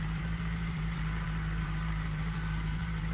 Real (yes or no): no